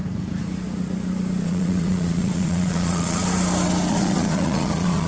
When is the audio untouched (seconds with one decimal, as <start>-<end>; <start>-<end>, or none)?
0.0-1.4; 3.2-3.9